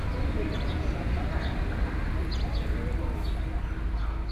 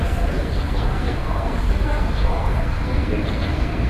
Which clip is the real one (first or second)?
first